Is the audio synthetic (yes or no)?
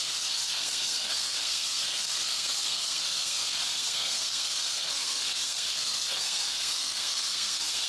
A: yes